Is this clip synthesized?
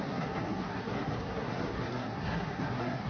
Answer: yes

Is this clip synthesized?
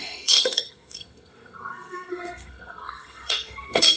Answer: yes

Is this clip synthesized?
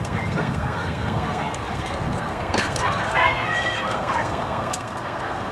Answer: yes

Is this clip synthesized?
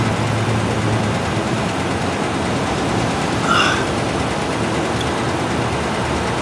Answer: no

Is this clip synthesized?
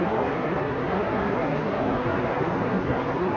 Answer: yes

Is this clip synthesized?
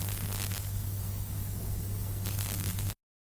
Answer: yes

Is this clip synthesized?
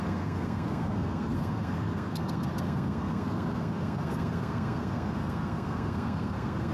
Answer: yes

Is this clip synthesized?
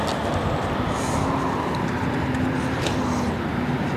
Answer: no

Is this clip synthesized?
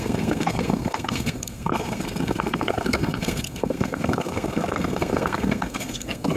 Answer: yes